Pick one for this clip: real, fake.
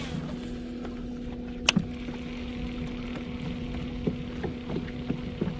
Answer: real